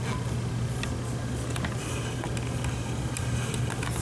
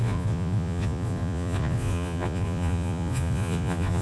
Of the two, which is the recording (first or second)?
first